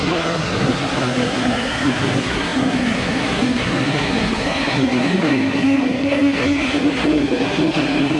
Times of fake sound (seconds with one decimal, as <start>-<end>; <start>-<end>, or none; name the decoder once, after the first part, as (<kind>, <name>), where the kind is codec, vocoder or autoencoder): 0.0-8.2 (codec, SNAC)